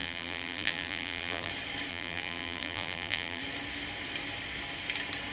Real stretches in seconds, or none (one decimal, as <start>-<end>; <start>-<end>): 1.5-1.9; 3.4-5.3